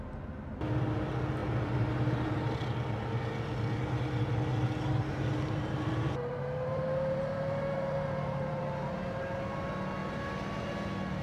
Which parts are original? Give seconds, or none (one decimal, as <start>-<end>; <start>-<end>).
0.0-1.4; 2.5-5.1; 8.6-11.2